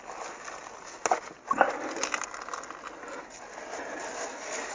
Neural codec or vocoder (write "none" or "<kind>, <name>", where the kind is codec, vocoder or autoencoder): none